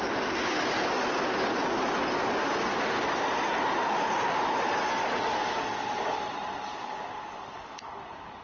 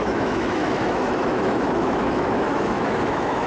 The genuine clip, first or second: first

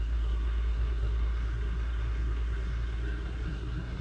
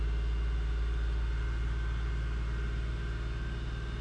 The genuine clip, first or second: second